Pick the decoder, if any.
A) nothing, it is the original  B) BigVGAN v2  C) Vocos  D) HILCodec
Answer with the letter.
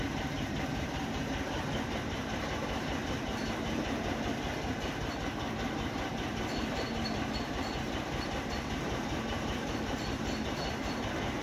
B